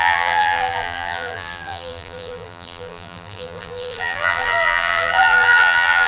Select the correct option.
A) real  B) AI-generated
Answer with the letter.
B